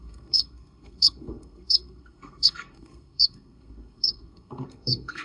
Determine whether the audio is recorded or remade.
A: remade